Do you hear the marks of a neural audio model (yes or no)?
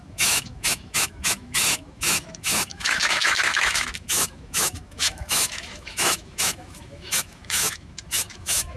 yes